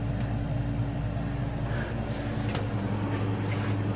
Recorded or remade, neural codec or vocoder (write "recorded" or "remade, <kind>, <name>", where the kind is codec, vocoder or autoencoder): recorded